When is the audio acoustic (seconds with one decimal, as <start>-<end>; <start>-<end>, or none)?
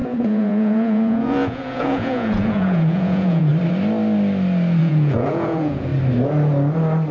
3.5-4.8; 5.9-7.1